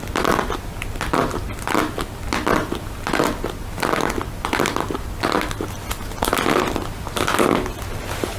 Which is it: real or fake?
real